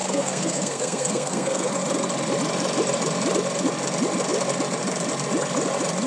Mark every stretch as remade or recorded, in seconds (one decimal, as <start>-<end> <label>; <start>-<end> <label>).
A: 0.0-1.7 remade; 1.7-6.1 recorded